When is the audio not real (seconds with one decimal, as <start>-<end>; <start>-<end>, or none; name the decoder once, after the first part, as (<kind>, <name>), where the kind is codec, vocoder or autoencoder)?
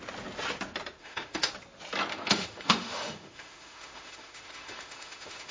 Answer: 1.0-1.5 (autoencoder, DAC-VAE); 2.1-5.5